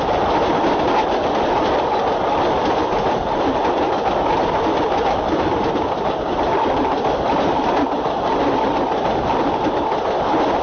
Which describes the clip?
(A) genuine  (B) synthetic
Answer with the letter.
A